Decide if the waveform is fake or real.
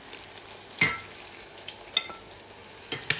real